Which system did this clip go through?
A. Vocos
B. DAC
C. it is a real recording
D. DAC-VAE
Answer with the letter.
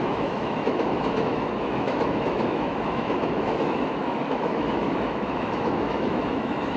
D